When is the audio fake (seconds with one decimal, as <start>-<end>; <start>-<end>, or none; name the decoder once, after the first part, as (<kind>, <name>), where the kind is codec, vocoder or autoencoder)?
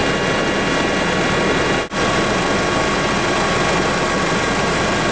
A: none